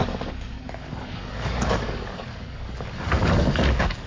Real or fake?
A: fake